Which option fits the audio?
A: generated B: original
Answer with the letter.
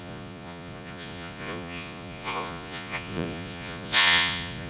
A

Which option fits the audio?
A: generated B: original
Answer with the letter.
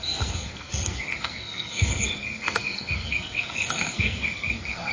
A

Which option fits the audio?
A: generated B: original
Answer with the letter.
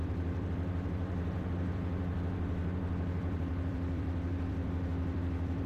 A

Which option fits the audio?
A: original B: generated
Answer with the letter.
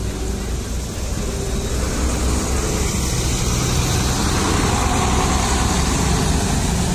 A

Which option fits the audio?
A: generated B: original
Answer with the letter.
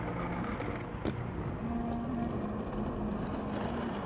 B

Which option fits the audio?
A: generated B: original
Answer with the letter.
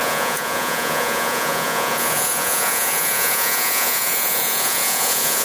A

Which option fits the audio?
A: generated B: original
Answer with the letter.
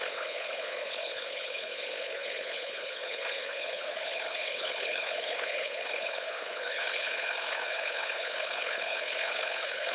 A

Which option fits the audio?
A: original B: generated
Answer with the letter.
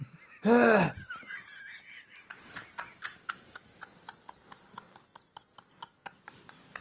A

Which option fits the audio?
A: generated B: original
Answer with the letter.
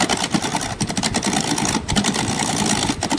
B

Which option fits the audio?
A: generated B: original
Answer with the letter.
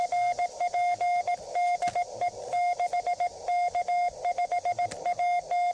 B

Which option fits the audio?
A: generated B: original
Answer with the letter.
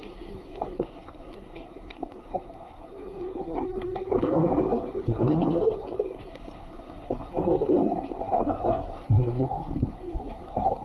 A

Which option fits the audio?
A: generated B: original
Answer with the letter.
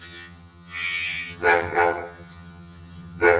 A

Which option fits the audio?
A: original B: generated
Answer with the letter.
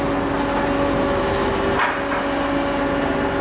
A